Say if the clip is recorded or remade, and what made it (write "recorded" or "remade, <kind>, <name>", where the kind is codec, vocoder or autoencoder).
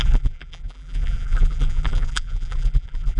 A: remade, vocoder, BigVGAN v2